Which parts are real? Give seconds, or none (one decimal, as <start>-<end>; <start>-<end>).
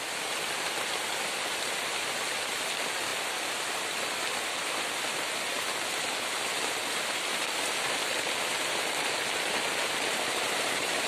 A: 0.0-11.1